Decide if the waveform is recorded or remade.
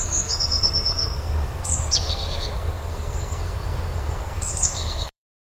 remade